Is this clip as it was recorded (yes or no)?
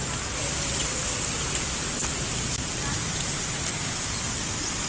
yes